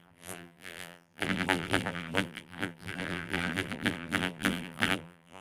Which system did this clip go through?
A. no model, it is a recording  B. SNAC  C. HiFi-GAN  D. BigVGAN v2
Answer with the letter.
D